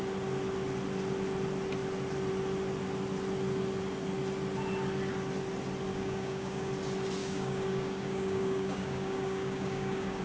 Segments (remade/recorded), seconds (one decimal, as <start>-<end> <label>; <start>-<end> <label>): 0.0-5.9 recorded; 5.9-6.7 remade; 6.7-7.2 recorded; 7.2-10.2 remade